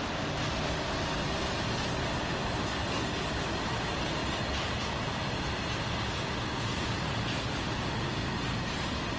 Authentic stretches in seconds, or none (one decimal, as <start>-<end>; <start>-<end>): 0.0-9.2